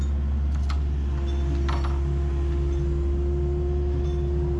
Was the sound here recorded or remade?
recorded